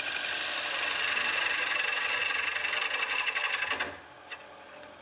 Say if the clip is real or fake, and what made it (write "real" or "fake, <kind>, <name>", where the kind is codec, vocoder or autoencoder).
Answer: real